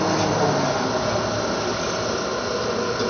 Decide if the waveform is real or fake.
real